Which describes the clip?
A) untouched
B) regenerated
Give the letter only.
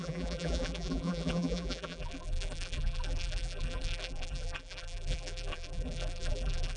B